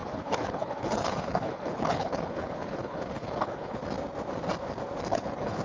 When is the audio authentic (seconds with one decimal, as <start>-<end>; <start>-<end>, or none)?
3.8-5.1